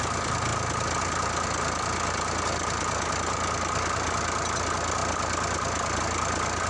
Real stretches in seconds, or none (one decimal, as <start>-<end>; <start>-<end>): 0.0-6.7